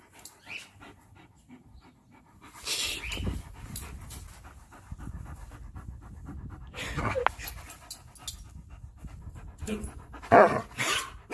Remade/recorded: recorded